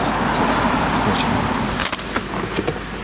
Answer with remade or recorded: recorded